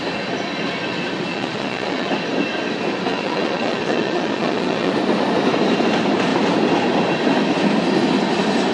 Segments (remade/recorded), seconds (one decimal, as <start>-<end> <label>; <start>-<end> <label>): 0.0-1.3 recorded; 1.3-2.1 remade; 2.1-3.1 recorded; 3.1-4.9 remade; 4.9-8.7 recorded